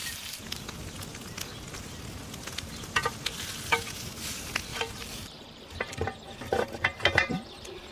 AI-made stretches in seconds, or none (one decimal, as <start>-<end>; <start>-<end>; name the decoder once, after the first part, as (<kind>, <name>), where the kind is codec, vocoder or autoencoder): 0.0-0.6 (vocoder, BigVGAN v2); 4.7-7.3